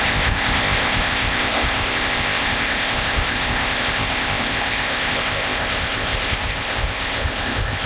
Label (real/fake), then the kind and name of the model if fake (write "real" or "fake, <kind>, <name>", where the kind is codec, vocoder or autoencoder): fake, codec, ZipCodec